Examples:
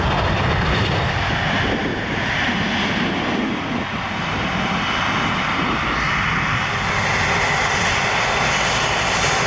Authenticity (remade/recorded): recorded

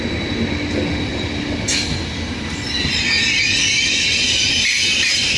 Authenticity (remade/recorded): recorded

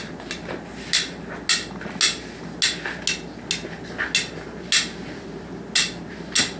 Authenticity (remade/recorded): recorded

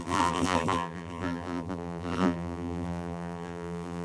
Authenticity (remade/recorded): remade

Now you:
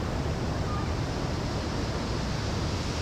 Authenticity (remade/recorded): recorded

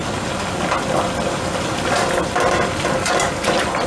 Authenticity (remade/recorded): recorded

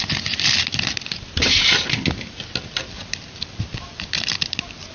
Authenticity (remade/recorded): recorded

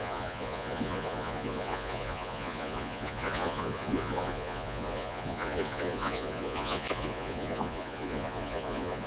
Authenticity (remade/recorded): remade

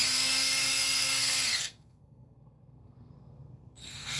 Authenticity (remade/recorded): remade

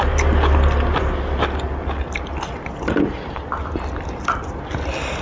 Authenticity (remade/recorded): recorded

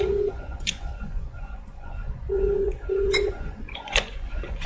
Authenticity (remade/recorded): remade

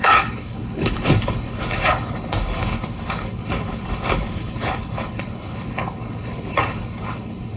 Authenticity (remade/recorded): remade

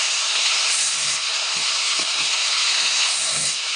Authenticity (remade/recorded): remade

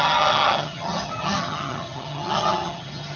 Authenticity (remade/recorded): remade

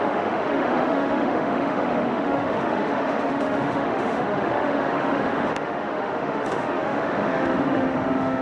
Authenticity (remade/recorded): remade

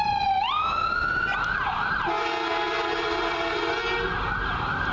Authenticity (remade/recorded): recorded